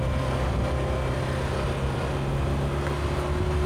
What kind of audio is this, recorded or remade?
recorded